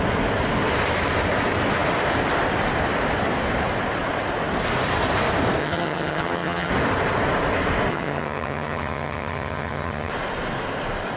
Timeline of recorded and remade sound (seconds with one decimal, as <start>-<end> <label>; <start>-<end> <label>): 0.0-5.6 recorded; 5.6-6.7 remade; 6.7-7.9 recorded; 7.9-10.1 remade; 10.1-11.2 recorded